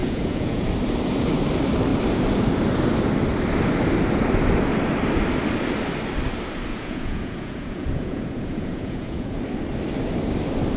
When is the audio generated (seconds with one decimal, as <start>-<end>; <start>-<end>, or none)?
0.0-0.7; 6.7-9.4